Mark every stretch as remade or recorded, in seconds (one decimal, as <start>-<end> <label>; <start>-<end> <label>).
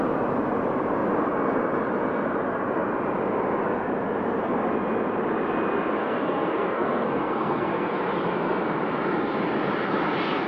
0.0-6.0 recorded; 6.0-8.0 remade; 8.0-10.5 recorded